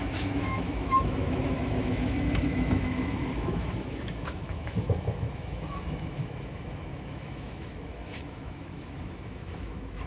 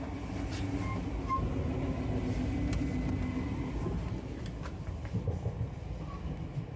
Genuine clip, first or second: second